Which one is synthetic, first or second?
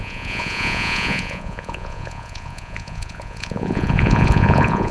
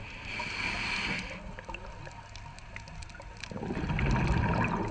first